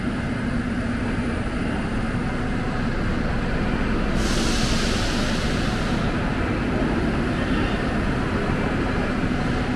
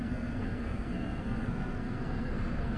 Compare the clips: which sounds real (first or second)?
first